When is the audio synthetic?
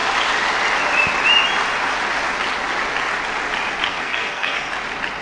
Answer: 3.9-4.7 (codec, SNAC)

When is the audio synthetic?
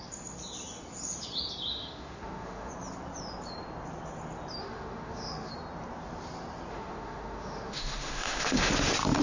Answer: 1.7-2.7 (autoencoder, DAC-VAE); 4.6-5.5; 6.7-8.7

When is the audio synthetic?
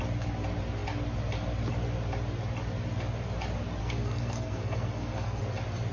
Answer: 3.8-5.4 (codec, SNAC)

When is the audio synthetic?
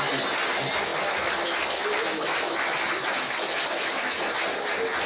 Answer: none